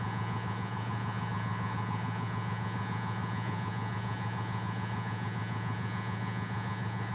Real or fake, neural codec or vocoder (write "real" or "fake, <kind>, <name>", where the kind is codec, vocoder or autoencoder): fake, vocoder, Vocos